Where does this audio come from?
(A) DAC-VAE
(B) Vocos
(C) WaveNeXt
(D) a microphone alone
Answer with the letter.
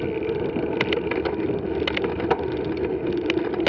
D